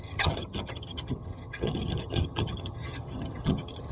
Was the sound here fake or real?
fake